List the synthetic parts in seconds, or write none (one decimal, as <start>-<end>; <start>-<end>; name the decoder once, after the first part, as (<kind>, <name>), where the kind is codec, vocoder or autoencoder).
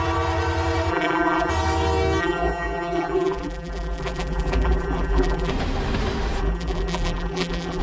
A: 0.9-1.5 (vocoder, BigVGAN v2); 2.2-5.5; 6.4-7.8